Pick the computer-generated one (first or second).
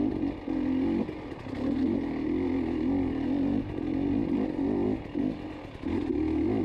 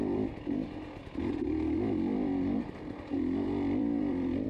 second